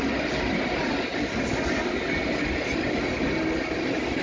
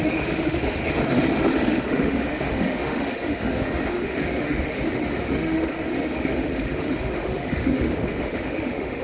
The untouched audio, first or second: first